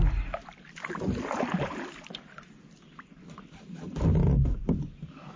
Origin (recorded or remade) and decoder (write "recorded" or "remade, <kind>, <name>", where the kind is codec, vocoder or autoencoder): recorded